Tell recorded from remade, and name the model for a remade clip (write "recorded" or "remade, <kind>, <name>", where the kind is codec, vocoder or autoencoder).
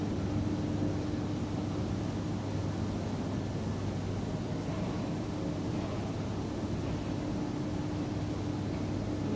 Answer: recorded